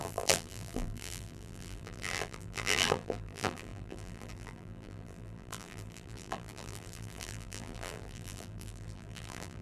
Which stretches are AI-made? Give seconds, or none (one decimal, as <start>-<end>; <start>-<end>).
0.0-9.6

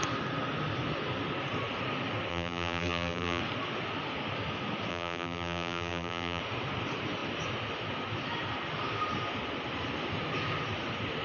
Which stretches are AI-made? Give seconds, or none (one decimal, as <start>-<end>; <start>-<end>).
2.3-3.4; 4.9-6.4

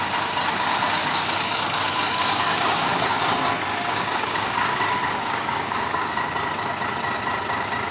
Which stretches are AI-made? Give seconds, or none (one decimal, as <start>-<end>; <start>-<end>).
1.0-3.2; 3.7-6.2

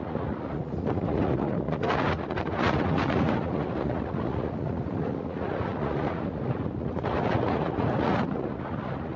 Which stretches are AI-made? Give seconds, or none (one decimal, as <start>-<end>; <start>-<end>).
0.0-9.2

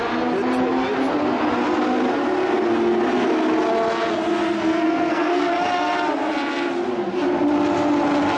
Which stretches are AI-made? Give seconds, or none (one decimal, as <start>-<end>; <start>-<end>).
4.4-5.5

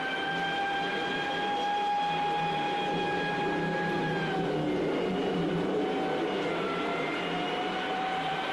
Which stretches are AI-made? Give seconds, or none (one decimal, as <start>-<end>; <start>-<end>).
6.9-8.5